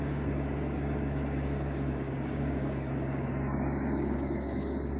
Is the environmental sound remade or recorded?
remade